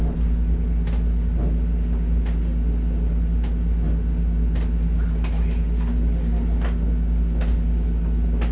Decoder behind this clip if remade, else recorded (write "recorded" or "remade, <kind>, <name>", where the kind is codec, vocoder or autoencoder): recorded